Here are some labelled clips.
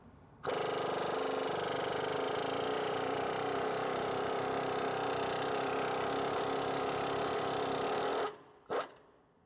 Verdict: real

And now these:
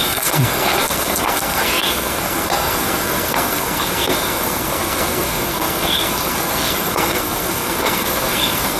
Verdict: fake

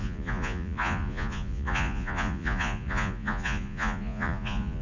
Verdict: fake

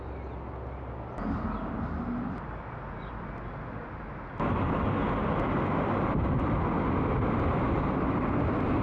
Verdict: real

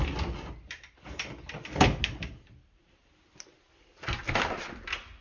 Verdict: real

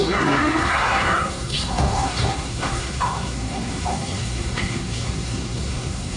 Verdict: fake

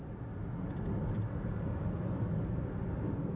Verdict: real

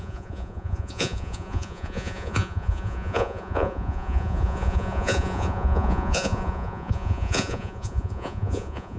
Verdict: fake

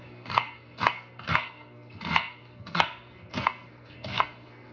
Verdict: fake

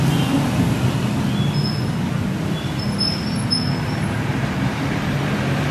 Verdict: real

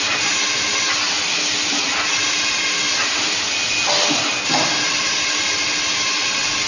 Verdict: real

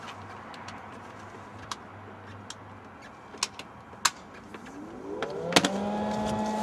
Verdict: real